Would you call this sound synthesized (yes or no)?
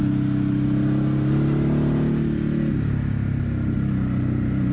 no